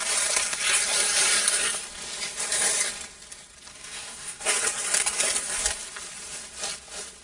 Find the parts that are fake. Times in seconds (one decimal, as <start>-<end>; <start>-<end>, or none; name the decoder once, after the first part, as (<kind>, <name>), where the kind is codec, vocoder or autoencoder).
3.7-4.4 (codec, SNAC)